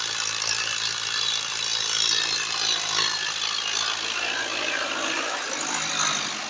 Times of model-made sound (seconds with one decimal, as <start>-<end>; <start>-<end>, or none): none